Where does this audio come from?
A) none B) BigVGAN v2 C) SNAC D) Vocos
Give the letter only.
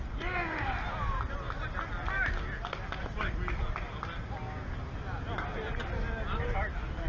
A